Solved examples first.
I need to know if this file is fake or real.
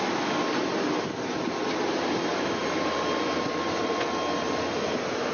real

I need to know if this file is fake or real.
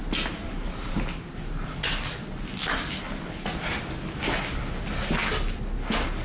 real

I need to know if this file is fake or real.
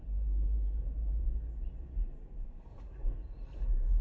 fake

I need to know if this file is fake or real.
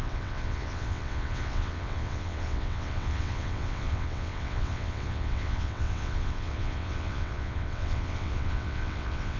fake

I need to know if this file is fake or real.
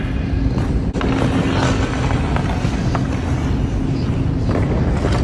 real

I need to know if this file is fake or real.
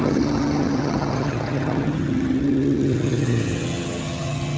fake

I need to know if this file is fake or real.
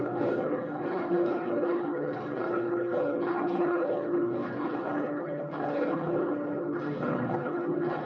fake